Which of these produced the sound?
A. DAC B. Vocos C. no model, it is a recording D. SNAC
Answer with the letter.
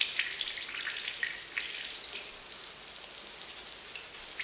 C